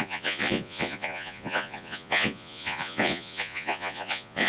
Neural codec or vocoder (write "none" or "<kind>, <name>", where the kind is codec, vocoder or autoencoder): vocoder, Vocos